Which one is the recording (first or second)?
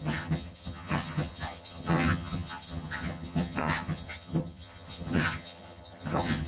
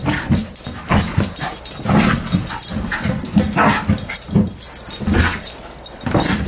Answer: second